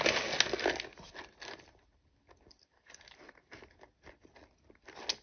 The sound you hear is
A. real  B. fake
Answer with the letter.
A